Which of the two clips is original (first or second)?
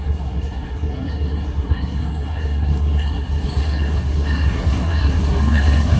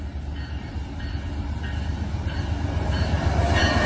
second